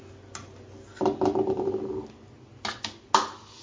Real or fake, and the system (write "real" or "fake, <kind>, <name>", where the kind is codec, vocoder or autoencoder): real